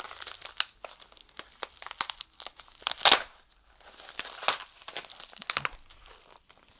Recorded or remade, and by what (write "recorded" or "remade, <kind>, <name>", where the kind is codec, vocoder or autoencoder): recorded